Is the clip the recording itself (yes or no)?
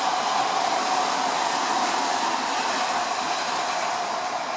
yes